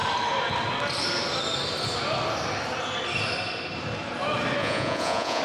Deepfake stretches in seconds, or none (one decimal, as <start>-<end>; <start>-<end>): 4.6-5.4